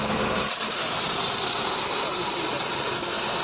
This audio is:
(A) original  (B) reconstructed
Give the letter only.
A